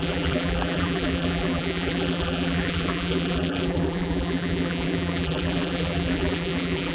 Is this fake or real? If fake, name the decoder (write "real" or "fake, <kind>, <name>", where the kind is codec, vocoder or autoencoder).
fake, vocoder, BigVGAN v2